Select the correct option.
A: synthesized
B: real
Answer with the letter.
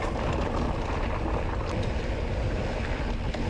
B